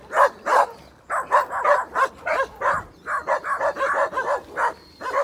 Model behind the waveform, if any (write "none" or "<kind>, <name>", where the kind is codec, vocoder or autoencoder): none